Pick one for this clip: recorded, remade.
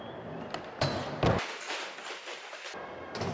recorded